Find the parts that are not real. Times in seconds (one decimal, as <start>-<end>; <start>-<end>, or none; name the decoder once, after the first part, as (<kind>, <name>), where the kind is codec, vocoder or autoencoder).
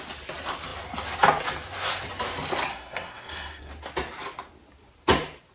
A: 2.7-3.7 (codec, SNAC)